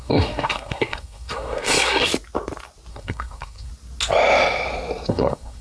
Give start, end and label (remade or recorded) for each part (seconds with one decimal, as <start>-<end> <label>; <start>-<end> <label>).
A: 0.0-2.1 remade; 2.1-2.9 recorded; 2.9-3.7 remade; 3.7-5.1 recorded; 5.1-5.6 remade